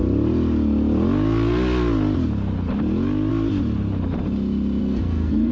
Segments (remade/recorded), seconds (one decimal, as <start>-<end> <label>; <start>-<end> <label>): 0.0-4.8 recorded; 4.8-5.5 remade